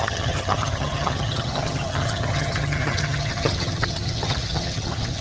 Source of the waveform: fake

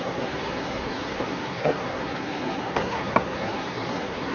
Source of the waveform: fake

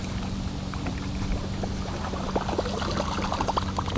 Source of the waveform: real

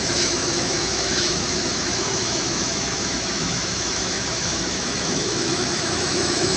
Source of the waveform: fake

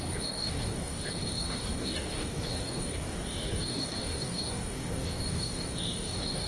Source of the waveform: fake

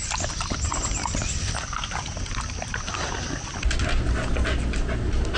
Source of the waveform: real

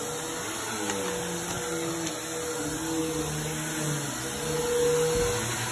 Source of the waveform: real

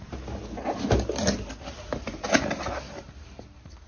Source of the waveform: real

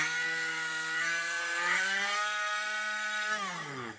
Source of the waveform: fake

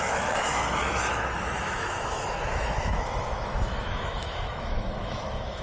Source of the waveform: fake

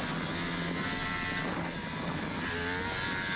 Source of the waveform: real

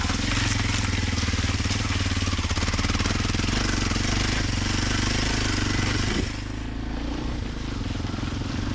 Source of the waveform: real